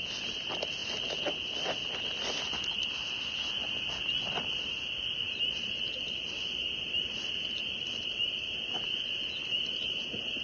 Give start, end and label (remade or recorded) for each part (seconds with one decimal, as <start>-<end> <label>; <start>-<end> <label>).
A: 0.0-10.4 recorded